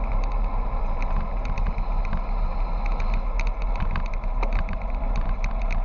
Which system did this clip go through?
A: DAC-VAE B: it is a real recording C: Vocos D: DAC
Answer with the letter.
B